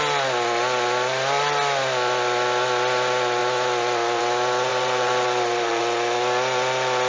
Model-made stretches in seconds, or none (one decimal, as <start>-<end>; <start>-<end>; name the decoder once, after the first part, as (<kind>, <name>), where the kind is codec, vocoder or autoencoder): 4.7-5.8 (vocoder, BigVGAN v2)